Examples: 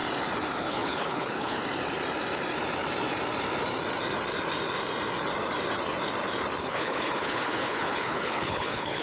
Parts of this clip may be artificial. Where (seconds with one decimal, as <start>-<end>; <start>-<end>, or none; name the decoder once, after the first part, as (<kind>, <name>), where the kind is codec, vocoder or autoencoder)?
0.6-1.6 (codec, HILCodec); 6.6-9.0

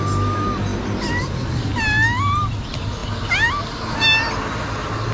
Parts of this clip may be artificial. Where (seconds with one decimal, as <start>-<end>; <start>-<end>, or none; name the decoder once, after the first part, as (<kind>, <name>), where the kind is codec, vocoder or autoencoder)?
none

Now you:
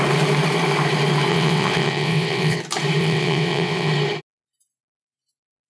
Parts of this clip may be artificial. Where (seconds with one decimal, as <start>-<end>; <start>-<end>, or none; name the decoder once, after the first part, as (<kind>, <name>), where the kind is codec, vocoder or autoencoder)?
1.3-2.6 (vocoder, WaveNeXt); 3.0-3.9

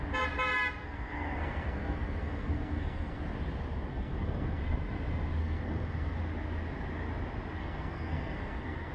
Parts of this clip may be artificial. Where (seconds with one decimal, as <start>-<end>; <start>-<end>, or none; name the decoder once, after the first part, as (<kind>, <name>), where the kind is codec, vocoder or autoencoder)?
0.8-3.2 (codec, SNAC); 3.9-4.6; 5.4-6.2; 7.6-8.9

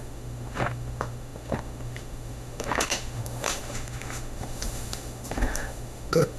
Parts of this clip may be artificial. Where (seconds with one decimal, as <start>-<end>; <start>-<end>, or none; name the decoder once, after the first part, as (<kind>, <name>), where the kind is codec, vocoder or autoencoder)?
0.0-6.4 (autoencoder, DAC-VAE)

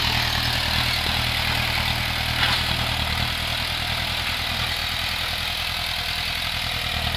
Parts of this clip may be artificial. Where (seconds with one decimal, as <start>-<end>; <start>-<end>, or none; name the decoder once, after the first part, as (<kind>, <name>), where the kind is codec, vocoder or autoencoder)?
none

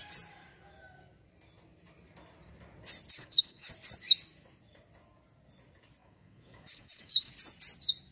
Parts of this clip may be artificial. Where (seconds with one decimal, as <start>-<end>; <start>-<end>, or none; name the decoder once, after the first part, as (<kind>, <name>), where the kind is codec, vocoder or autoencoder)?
3.1-3.7 (autoencoder, DAC-VAE); 6.0-7.3

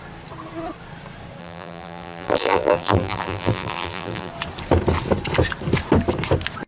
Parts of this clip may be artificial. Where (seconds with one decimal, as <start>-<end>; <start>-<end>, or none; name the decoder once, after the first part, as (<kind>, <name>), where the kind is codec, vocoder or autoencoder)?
1.4-4.3 (vocoder, BigVGAN v2)